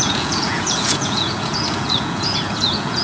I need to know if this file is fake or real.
fake